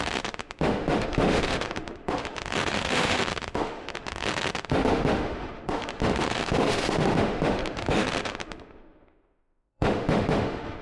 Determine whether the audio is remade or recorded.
remade